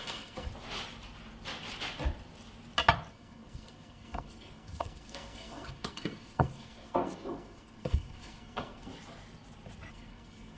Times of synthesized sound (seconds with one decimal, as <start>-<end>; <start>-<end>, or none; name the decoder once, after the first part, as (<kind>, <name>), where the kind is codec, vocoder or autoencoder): 0.0-0.5 (codec, SNAC); 3.1-8.9; 9.9-10.6